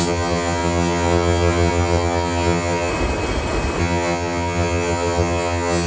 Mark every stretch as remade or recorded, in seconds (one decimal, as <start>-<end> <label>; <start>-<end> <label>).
0.0-2.9 remade; 2.9-3.8 recorded; 3.8-5.9 remade